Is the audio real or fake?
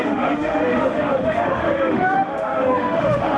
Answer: fake